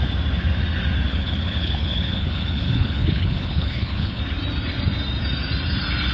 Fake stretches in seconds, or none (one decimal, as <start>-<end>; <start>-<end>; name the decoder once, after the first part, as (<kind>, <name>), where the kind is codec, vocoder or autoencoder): 1.1-4.2 (codec, HILCodec)